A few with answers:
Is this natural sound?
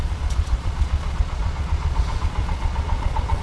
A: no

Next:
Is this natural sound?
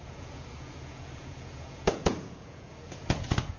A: no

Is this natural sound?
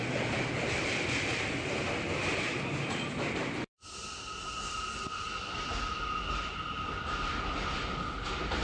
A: yes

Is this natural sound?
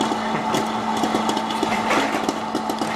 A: yes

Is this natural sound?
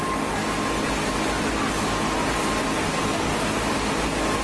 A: yes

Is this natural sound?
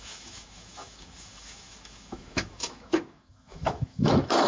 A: no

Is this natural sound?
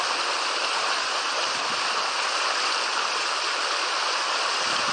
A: no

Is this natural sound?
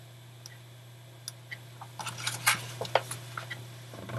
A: yes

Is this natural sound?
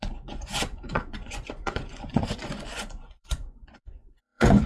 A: no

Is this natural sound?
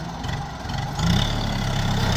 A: yes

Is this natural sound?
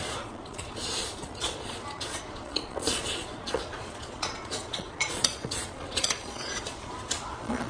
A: no